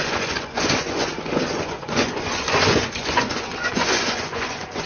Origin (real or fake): fake